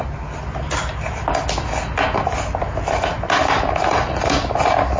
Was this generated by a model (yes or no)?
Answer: no